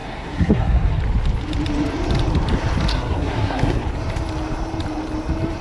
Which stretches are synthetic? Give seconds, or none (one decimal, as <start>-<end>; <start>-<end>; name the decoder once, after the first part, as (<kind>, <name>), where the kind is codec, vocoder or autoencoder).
0.0-1.0 (codec, SNAC); 2.9-3.8